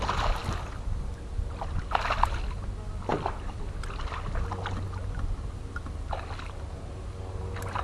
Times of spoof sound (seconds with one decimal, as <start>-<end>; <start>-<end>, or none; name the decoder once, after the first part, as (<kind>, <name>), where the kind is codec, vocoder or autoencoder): none